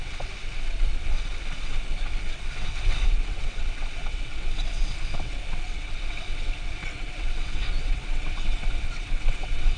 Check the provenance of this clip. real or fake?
fake